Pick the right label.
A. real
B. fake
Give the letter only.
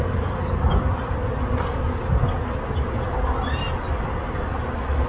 A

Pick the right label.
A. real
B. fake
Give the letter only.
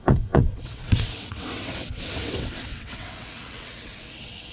B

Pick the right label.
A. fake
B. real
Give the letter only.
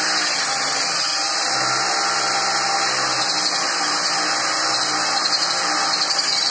B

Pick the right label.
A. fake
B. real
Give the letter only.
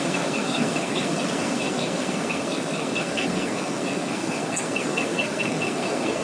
A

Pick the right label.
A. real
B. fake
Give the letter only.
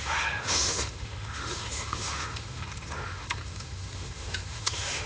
B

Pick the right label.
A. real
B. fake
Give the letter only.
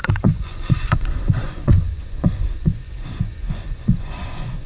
B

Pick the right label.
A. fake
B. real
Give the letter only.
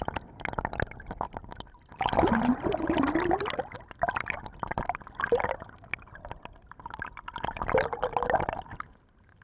B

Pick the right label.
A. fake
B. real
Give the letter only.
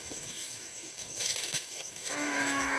A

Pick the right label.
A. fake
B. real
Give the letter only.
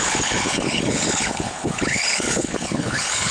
A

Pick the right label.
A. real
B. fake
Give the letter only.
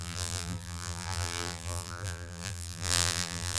B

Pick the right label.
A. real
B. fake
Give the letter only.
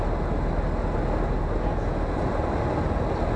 A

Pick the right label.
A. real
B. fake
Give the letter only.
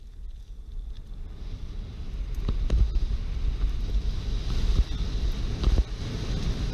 A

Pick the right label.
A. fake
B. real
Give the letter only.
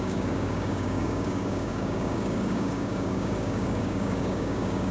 A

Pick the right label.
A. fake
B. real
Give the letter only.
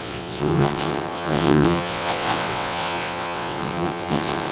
A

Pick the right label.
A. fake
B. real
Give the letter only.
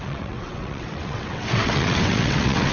A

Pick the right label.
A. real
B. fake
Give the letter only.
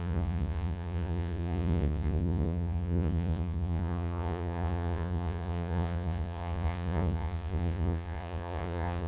B